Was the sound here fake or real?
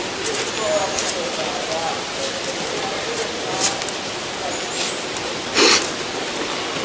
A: real